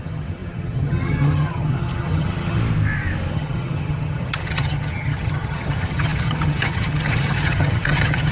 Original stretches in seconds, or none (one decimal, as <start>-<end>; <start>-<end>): 2.6-3.3